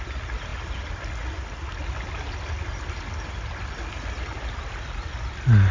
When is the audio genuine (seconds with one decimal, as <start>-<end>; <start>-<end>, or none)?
0.0-5.7